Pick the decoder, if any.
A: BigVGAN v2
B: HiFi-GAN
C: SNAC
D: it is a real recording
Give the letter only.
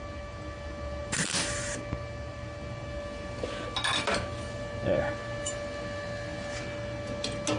D